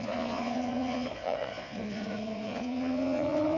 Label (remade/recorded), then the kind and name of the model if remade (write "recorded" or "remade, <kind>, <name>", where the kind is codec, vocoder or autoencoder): remade, vocoder, Vocos